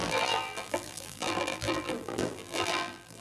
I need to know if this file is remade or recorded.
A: remade